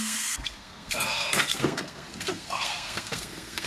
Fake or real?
fake